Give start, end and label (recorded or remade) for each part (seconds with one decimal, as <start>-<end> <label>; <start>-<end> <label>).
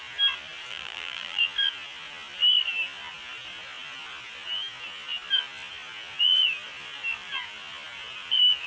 0.0-0.7 recorded; 0.7-1.4 remade; 1.4-8.7 recorded